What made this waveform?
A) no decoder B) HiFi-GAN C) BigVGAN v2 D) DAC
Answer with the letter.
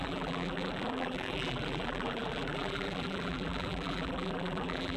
C